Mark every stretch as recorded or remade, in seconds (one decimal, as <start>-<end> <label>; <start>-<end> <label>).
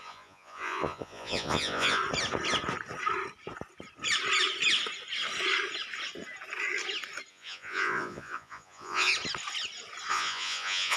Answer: 0.0-2.0 remade; 2.0-7.3 recorded; 7.3-9.1 remade; 9.1-10.1 recorded; 10.1-11.0 remade